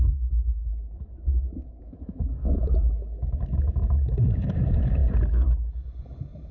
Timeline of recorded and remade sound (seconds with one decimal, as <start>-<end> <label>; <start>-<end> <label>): 0.0-5.0 remade; 5.0-6.5 recorded